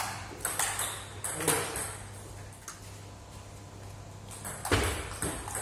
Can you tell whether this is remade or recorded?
recorded